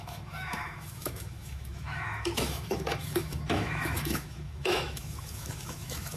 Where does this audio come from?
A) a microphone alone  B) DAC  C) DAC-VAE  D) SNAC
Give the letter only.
C